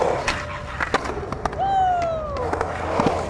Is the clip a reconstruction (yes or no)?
no